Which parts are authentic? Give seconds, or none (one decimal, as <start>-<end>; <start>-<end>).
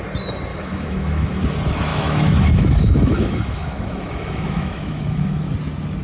0.0-0.5; 1.5-1.9; 5.5-6.0